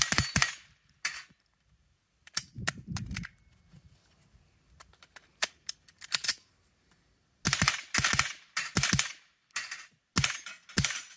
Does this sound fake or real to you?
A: real